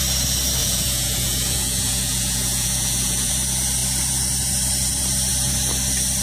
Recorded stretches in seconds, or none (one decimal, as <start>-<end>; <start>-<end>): 0.0-0.6; 3.3-6.2